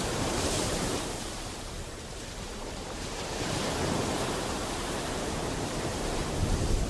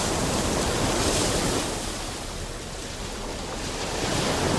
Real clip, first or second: second